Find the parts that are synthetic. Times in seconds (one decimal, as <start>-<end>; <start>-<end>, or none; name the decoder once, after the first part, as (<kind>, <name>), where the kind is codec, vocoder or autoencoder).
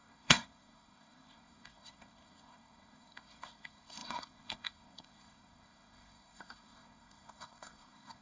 0.0-8.2 (codec, SNAC)